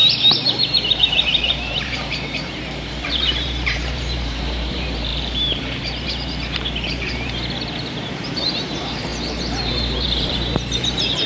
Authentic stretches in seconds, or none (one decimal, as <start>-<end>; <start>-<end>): 0.0-1.0; 9.1-9.7